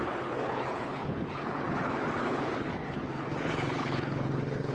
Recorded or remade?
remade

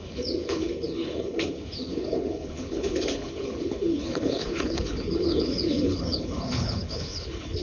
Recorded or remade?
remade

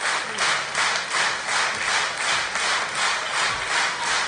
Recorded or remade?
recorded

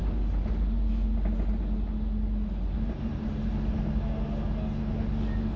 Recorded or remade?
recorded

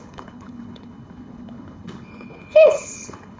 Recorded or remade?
remade